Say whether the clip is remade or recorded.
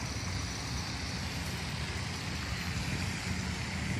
recorded